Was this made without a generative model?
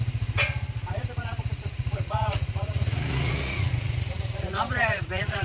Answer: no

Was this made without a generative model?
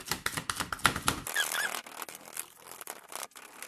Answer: yes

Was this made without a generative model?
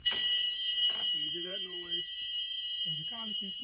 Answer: no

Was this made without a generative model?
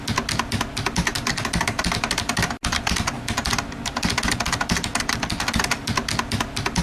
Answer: yes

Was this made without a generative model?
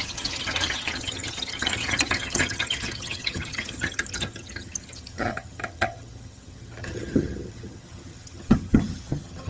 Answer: no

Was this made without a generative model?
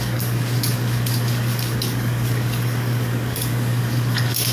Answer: no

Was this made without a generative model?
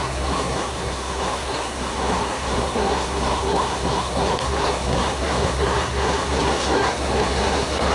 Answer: no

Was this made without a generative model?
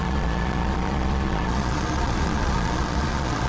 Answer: no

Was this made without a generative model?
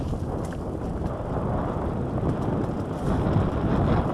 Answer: yes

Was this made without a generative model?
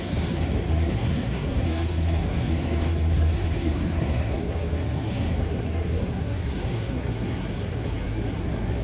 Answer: no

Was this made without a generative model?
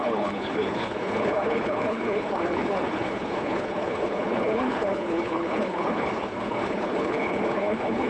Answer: no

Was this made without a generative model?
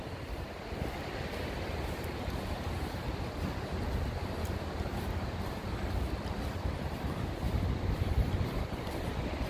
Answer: yes